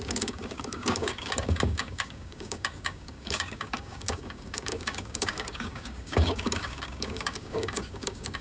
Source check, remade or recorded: remade